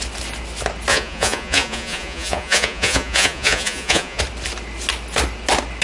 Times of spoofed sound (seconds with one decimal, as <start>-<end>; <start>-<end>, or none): 0.9-4.2